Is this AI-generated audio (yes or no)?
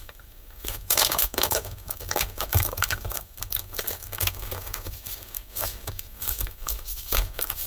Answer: yes